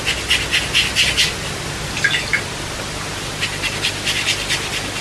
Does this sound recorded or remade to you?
recorded